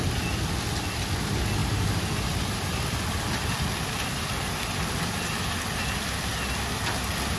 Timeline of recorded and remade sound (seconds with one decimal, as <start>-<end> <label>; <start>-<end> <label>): 0.0-1.6 recorded; 1.6-5.5 remade; 5.5-7.4 recorded

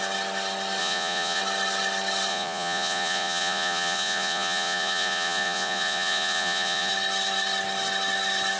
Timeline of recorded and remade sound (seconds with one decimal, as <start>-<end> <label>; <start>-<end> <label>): 0.0-0.8 recorded; 0.8-1.4 remade; 1.4-2.3 recorded; 2.3-6.9 remade; 6.9-8.6 recorded

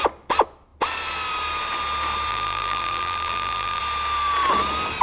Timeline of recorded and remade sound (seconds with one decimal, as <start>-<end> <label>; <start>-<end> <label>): 0.0-2.3 recorded; 2.3-3.8 remade; 3.8-5.0 recorded